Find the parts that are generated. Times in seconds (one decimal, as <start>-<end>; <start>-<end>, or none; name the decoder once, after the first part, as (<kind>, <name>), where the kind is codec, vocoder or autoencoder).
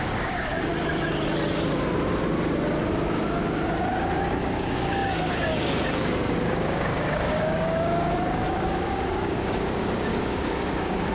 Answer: 0.0-0.7 (codec, DAC); 4.4-11.1